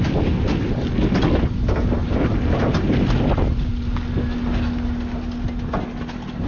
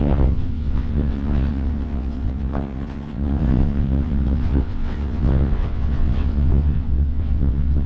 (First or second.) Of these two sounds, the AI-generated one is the second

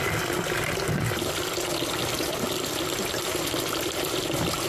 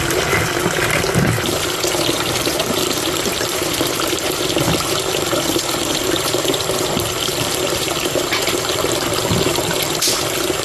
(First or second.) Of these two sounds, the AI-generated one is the second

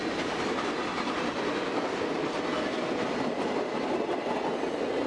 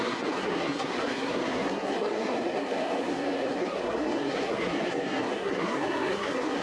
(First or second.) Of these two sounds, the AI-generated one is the second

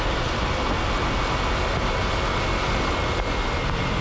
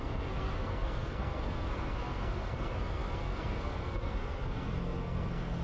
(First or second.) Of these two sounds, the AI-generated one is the second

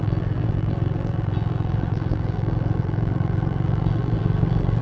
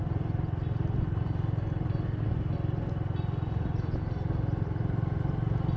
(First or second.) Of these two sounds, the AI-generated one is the first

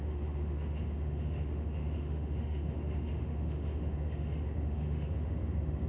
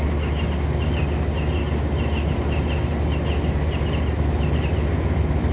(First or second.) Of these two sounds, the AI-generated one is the first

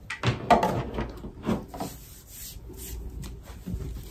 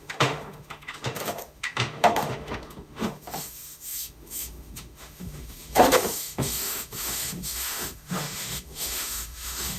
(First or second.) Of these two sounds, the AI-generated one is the second